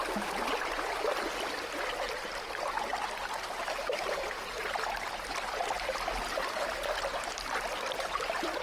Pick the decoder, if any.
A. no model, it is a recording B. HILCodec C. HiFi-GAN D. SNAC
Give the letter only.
A